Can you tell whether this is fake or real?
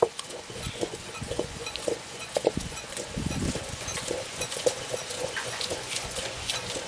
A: fake